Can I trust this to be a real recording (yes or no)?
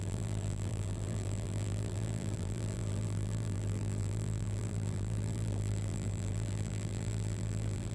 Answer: no